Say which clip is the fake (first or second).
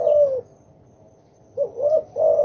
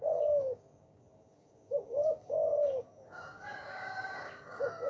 second